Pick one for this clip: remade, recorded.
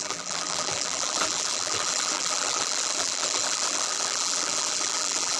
remade